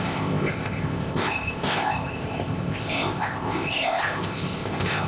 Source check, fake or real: fake